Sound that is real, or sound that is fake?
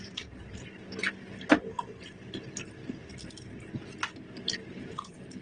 real